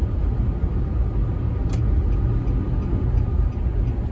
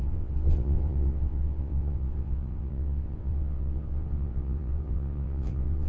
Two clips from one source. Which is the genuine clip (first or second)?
first